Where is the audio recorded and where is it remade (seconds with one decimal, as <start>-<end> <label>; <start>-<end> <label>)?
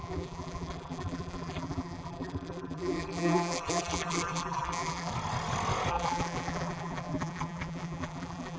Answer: 0.0-5.1 remade; 5.1-5.9 recorded; 5.9-8.6 remade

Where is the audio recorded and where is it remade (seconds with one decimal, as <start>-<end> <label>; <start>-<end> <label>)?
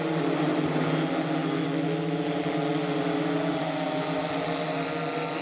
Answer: 0.0-5.4 recorded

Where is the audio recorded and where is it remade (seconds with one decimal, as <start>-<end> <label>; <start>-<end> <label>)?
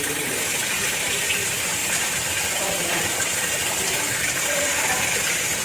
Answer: 0.0-5.6 remade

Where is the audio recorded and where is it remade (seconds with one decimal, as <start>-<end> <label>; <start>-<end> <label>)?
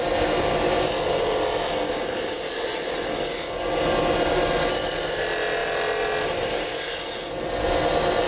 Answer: 0.0-8.3 recorded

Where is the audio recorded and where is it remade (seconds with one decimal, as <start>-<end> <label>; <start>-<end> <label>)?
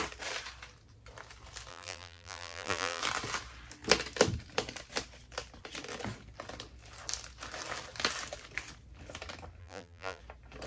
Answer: 0.0-1.7 recorded; 1.7-3.0 remade; 3.0-9.6 recorded; 9.6-10.2 remade; 10.2-10.7 recorded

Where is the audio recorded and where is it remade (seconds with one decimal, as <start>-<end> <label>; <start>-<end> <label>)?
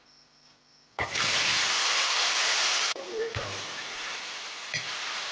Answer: 0.0-2.0 recorded; 2.0-4.2 remade; 4.2-5.3 recorded